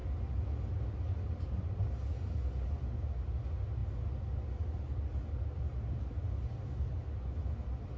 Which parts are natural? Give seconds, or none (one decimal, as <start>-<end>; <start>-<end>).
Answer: 0.0-8.0